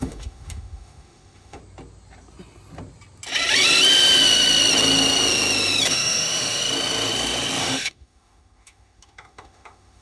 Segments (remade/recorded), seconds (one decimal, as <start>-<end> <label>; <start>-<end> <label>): 0.0-1.6 remade; 1.6-5.9 recorded; 5.9-6.6 remade; 6.6-7.6 recorded; 7.6-10.0 remade